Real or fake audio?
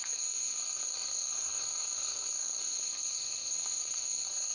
fake